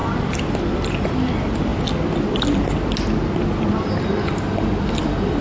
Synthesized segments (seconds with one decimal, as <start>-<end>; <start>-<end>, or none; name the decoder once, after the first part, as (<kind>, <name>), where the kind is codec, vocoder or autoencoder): none